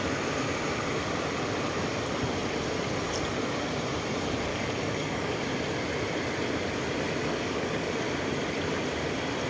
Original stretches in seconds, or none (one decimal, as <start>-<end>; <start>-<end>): 0.0-4.5; 5.4-7.2; 7.9-9.5